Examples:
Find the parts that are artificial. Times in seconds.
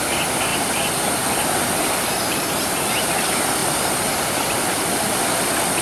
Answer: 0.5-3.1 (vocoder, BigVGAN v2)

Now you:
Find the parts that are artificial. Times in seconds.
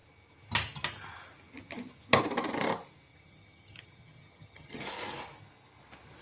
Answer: 3.1-4.8 (vocoder, HiFi-GAN)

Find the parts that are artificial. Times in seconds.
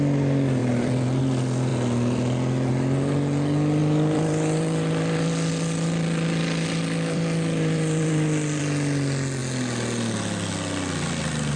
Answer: 0.6-1.2 (vocoder, BigVGAN v2); 3.8-8.6